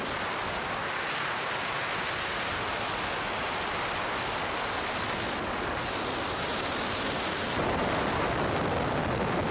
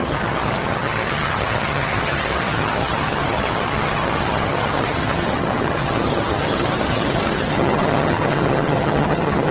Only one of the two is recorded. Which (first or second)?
first